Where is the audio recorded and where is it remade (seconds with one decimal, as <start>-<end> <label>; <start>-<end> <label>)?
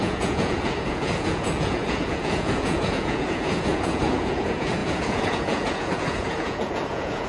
0.0-7.3 remade